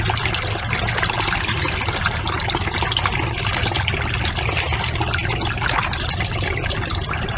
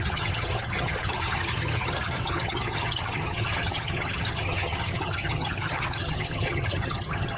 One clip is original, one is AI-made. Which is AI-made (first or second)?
second